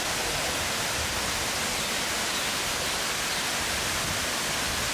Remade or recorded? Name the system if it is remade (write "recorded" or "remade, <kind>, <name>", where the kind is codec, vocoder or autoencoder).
recorded